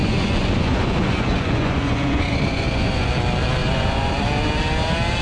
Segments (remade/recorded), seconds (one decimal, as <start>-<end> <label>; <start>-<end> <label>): 0.0-3.1 remade; 3.1-3.6 recorded; 3.6-4.2 remade; 4.2-5.2 recorded